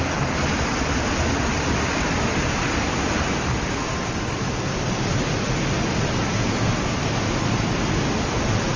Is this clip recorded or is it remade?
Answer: recorded